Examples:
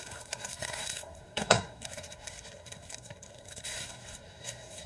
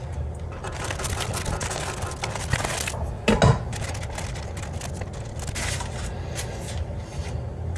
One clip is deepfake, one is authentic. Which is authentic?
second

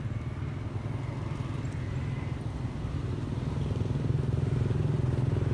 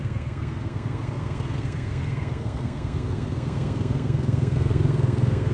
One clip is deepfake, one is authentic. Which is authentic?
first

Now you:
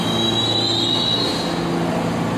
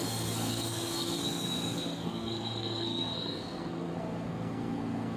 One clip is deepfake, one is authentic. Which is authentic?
first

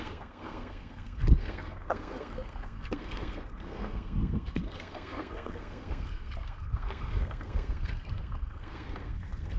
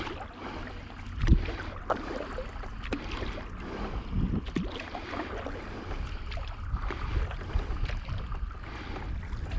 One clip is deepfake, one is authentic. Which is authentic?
second